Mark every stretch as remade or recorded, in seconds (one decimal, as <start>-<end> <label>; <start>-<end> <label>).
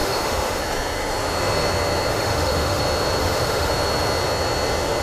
0.0-0.6 remade; 0.6-2.1 recorded; 2.1-2.8 remade; 2.8-3.2 recorded; 3.2-3.7 remade; 3.7-5.0 recorded